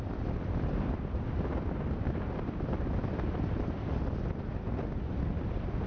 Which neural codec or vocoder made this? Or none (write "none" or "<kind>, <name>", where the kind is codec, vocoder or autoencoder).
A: none